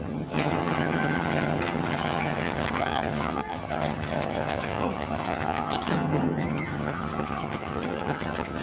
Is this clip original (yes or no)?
no